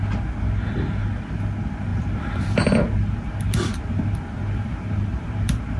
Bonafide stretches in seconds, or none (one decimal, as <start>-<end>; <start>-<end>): 0.0-1.9